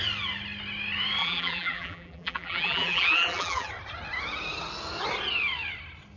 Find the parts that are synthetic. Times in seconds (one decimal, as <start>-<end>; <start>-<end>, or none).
1.2-3.7